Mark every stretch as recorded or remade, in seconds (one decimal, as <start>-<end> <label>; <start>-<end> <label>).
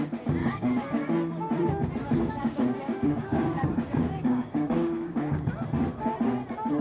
0.0-0.4 recorded; 0.4-1.1 remade; 1.1-2.0 recorded; 2.0-5.5 remade; 5.5-6.8 recorded